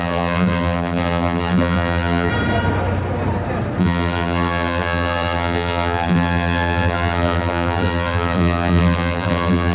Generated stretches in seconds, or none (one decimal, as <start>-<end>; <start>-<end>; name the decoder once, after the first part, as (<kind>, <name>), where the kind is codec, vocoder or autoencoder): 0.0-2.3 (vocoder, BigVGAN v2); 3.8-9.7

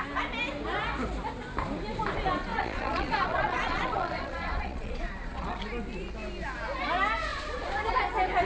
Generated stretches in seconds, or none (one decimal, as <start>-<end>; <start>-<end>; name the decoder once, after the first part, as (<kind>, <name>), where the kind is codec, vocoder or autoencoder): 2.5-5.6 (vocoder, Vocos); 7.3-8.0

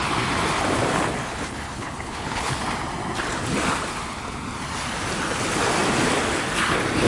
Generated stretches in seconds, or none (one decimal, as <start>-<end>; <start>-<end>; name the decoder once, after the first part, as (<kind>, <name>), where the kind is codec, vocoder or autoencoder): 1.2-2.5 (codec, HILCodec)

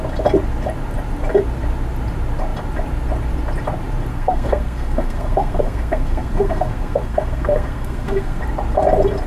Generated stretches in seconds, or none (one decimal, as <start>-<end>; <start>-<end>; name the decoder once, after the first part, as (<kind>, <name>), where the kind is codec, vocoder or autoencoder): 4.1-8.4 (codec, SNAC)

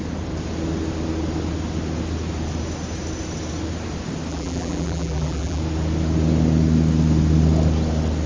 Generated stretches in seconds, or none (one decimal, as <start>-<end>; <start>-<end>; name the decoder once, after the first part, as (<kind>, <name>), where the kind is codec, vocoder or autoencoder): 4.3-5.6 (vocoder, BigVGAN v2)

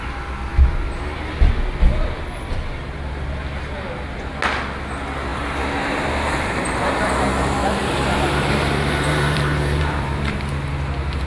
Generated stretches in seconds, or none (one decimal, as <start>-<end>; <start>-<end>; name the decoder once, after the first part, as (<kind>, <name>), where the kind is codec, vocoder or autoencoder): 5.3-10.4 (vocoder, BigVGAN v2)

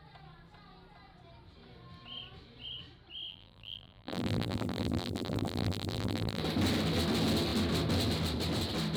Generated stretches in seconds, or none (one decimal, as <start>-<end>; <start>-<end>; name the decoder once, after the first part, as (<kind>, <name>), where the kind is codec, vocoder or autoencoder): 3.3-6.4 (vocoder, BigVGAN v2)